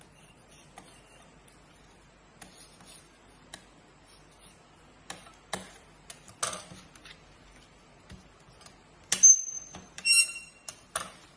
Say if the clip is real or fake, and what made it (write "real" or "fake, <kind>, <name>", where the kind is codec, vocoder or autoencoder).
real